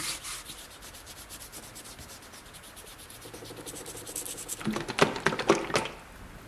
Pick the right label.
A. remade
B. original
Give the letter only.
B